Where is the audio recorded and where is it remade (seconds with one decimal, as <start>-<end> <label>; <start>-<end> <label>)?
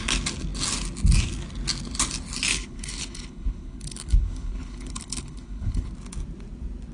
0.0-2.5 recorded; 2.5-5.9 remade; 5.9-6.9 recorded